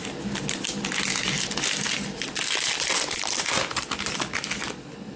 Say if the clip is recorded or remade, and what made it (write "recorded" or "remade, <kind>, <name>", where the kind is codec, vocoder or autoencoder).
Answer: recorded